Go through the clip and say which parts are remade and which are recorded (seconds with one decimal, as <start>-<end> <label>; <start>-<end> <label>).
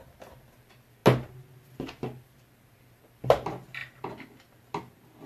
0.0-1.0 remade; 1.0-2.8 recorded; 2.8-3.8 remade; 3.8-5.3 recorded